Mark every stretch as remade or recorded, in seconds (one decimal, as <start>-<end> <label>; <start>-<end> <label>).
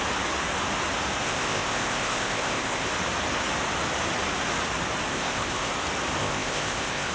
0.0-1.2 recorded; 1.2-2.9 remade; 2.9-5.1 recorded; 5.1-5.7 remade; 5.7-6.2 recorded; 6.2-7.1 remade